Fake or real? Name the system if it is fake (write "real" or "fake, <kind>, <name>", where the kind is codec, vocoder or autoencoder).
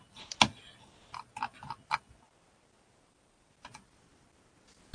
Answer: real